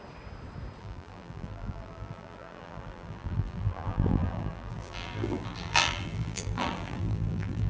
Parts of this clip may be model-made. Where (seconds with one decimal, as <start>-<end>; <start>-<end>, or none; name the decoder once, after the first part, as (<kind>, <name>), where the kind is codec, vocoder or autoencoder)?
0.8-7.7 (vocoder, BigVGAN v2)